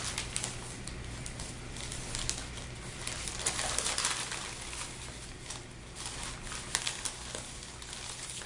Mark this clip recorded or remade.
recorded